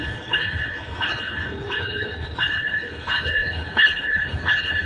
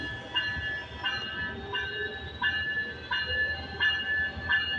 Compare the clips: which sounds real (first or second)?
second